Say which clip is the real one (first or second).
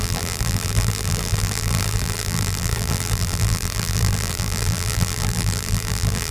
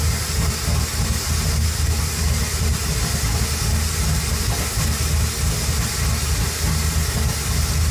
second